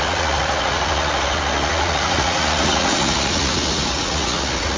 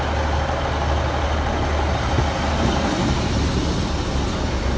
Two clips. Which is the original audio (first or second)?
second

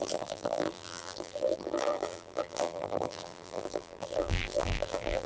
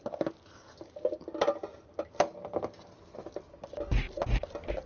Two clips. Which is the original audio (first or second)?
second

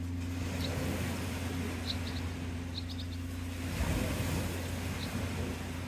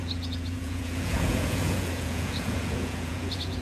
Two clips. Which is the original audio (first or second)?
first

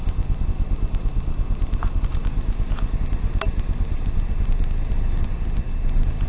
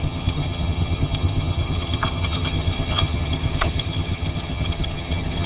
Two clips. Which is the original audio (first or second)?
first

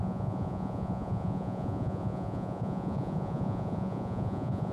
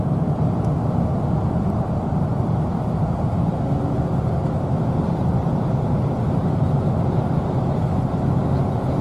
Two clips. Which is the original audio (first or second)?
second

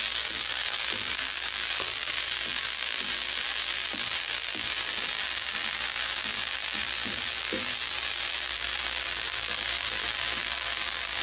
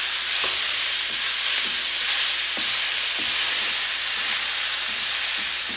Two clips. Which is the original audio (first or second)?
second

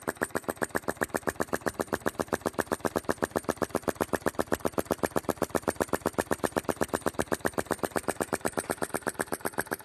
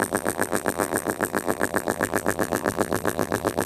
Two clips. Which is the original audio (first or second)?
first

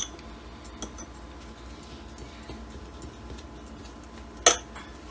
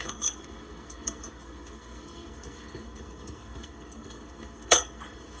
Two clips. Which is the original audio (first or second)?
first